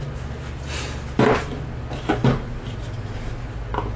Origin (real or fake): real